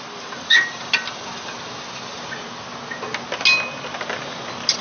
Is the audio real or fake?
real